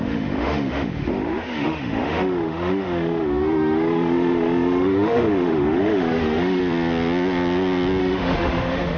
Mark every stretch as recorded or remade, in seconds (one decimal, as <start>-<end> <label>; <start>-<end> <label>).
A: 0.0-6.6 remade; 6.6-8.0 recorded; 8.0-9.0 remade